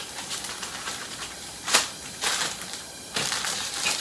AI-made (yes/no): yes